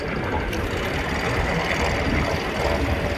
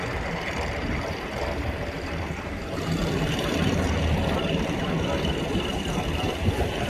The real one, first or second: first